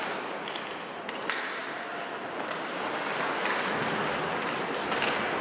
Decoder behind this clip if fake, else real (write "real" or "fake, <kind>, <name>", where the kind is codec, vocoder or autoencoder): real